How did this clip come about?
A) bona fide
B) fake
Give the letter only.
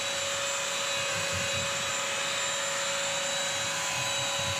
A